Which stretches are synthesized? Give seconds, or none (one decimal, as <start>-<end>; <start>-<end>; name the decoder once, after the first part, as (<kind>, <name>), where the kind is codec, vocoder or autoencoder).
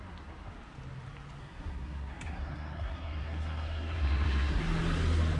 1.4-4.6 (codec, SNAC)